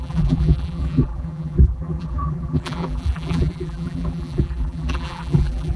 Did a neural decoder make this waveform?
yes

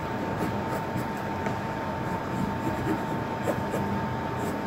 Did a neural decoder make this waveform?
no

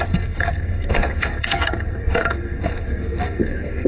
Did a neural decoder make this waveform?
yes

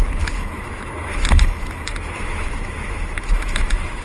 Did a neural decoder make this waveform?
yes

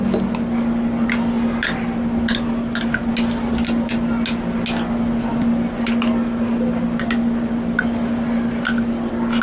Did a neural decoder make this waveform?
no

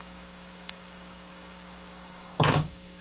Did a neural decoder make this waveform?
yes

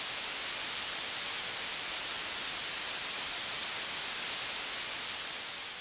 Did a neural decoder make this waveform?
no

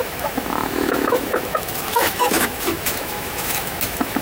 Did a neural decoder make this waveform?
yes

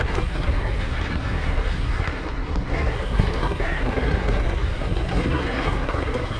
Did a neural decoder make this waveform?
yes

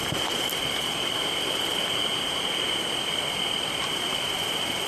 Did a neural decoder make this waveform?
no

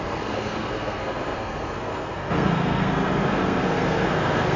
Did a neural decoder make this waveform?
yes